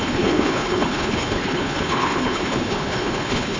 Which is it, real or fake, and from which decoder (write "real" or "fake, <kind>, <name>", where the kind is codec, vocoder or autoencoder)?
fake, codec, HILCodec